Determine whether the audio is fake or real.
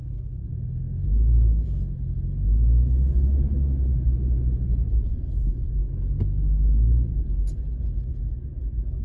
real